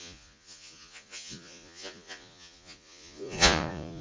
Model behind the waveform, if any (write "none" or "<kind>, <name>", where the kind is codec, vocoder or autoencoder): vocoder, Vocos